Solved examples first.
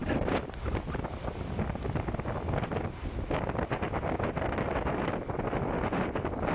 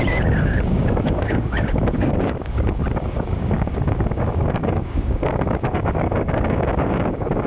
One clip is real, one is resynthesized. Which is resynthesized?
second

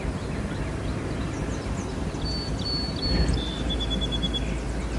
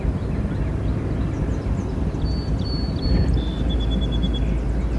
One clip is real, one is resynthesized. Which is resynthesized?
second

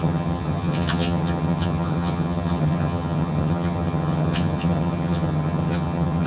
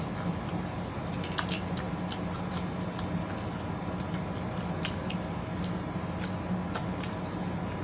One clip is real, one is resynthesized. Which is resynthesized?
first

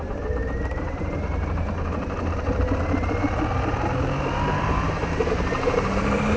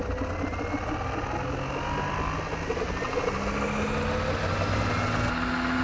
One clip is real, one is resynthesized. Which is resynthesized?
first